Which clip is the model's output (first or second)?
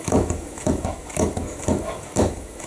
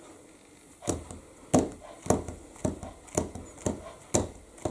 first